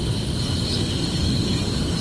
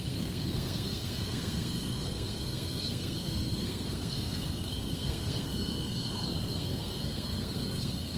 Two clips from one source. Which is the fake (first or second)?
second